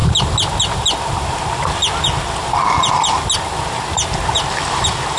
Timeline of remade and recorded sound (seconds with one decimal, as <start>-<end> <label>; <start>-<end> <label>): 0.0-5.2 recorded